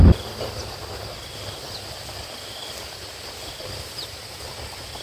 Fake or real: real